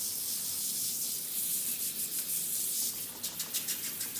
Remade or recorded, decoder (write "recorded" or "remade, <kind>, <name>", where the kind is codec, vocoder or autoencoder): recorded